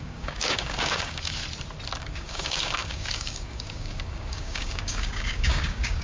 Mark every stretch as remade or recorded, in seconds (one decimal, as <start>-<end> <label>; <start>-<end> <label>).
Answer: 0.0-1.4 remade; 1.4-2.0 recorded; 2.0-6.0 remade